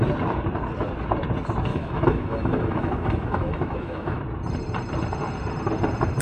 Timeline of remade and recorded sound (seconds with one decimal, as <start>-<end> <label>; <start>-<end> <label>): 0.0-1.7 recorded; 1.7-4.2 remade; 4.2-6.2 recorded